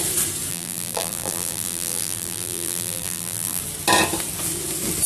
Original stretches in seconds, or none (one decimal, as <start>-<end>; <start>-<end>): 0.0-0.5; 3.6-5.1